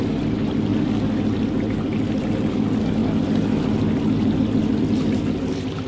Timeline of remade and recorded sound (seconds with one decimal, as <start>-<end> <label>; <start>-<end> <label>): 0.0-5.9 recorded